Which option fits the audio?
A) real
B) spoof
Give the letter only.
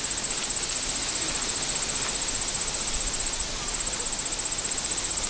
A